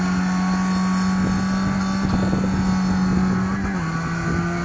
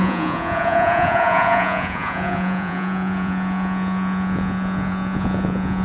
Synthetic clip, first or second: second